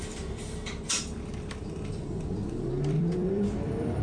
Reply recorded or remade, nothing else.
remade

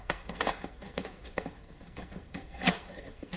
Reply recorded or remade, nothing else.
remade